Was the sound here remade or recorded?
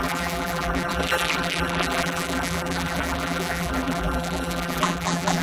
remade